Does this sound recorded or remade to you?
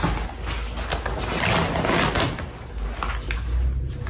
recorded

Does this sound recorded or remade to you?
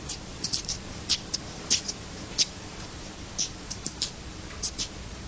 remade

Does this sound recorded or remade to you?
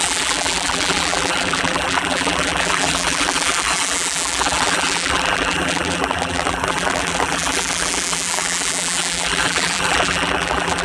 remade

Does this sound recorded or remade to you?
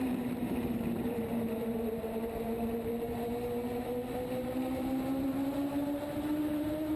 remade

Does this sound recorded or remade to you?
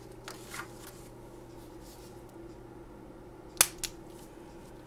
recorded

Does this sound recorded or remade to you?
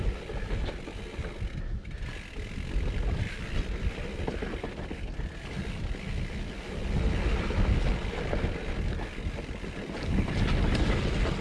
recorded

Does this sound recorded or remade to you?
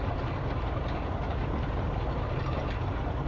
remade